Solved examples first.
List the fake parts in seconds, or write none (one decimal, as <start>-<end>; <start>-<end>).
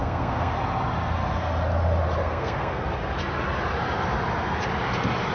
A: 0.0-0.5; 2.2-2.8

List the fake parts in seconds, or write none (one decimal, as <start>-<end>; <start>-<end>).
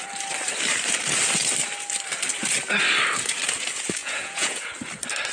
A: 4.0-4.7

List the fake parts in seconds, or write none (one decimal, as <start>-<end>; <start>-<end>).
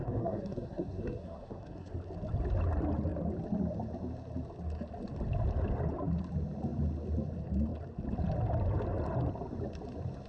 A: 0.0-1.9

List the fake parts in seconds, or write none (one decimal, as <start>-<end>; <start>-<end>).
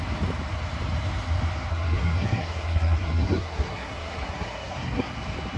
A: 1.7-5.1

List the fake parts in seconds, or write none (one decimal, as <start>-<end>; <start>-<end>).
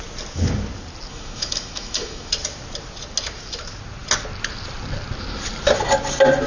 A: 1.1-2.3